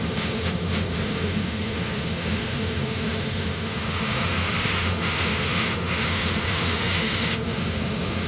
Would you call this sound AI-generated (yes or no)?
yes